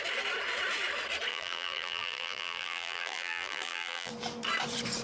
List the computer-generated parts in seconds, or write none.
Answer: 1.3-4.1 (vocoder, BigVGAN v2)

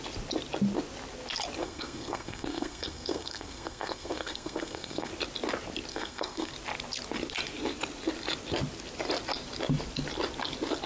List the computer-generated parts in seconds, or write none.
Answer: 1.6-5.1 (codec, SNAC); 5.9-6.5

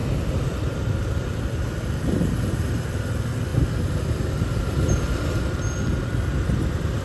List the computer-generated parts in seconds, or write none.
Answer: none

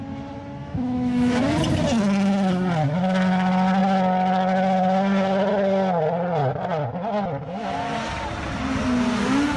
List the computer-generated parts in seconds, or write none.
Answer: 0.6-1.4 (autoencoder, DAC-VAE)

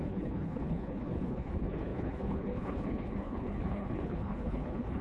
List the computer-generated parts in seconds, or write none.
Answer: 0.0-5.0 (codec, HILCodec)

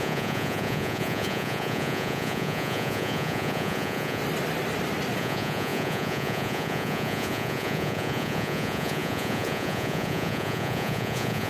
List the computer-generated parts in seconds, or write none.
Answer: 0.0-4.2 (vocoder, Vocos); 5.2-11.5

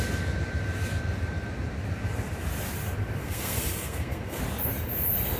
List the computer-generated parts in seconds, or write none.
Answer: 3.2-4.4 (codec, SNAC)

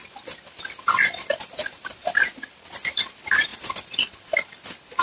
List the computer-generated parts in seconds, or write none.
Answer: 0.0-3.0 (vocoder, BigVGAN v2); 3.5-4.5